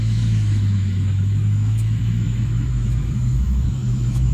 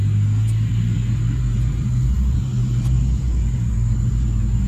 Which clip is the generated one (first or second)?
first